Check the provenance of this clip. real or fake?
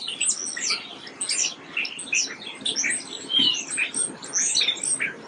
real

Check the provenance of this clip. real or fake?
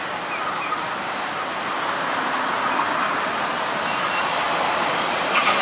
real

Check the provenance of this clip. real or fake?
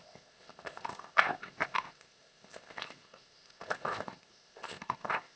fake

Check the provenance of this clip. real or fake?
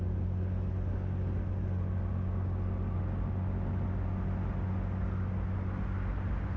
real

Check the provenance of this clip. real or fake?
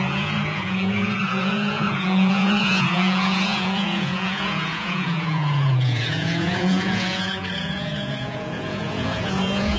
fake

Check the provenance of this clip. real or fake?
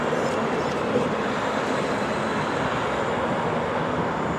real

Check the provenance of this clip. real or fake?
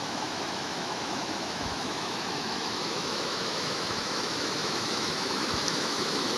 fake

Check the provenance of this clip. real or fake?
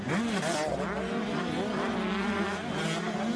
real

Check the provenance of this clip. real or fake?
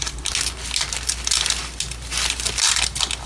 real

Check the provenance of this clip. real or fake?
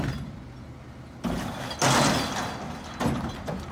real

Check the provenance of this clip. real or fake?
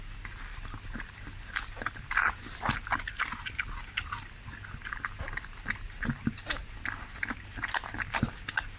real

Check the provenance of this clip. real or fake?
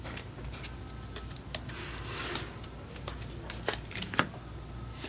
real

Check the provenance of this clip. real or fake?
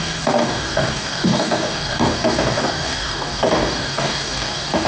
fake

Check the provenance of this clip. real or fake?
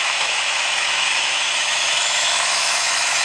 fake